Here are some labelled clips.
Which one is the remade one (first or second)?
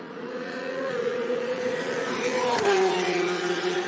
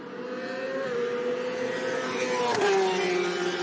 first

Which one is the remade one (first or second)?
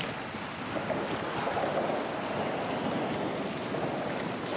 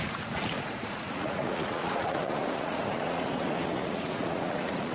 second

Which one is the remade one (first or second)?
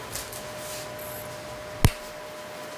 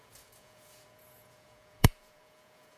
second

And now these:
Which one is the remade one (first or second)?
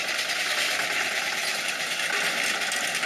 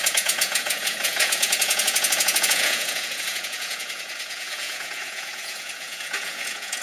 second